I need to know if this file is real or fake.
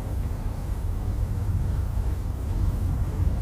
fake